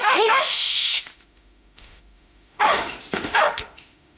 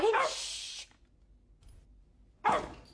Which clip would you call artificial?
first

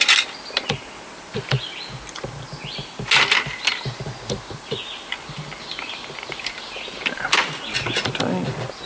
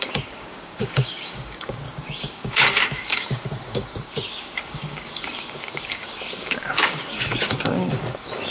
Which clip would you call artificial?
second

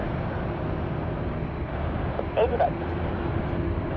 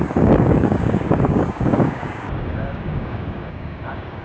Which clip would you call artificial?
second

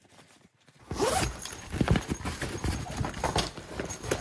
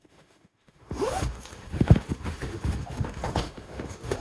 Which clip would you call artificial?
second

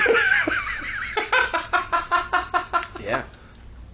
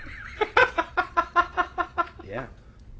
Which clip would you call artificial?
second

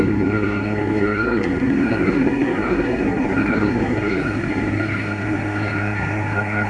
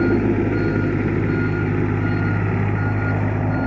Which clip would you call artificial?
first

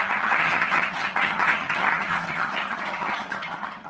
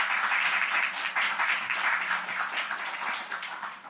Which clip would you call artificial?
first